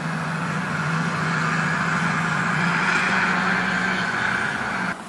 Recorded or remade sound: remade